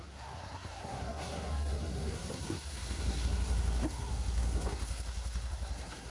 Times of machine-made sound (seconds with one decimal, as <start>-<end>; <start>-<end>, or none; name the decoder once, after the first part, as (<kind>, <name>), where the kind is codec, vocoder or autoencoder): 0.0-6.1 (codec, SNAC)